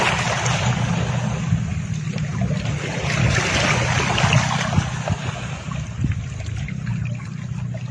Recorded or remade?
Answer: recorded